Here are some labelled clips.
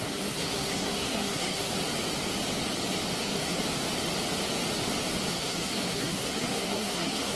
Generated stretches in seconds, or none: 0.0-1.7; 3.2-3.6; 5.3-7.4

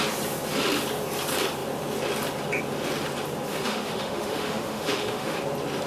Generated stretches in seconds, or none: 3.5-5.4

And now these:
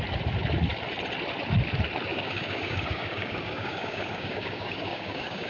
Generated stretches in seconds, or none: 2.1-5.5